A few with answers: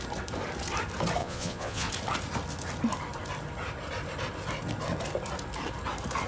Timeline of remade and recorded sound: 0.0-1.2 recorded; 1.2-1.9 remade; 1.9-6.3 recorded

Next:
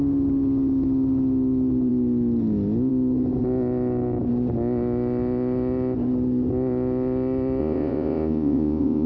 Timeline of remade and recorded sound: 0.0-7.6 recorded; 7.6-9.1 remade